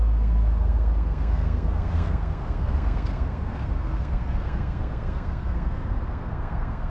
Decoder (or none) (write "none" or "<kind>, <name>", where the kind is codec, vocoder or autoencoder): codec, SNAC